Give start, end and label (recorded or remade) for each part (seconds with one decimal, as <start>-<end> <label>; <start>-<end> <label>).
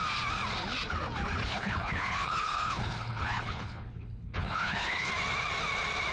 0.0-1.4 recorded; 1.4-5.1 remade; 5.1-6.1 recorded